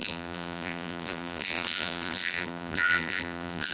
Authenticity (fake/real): fake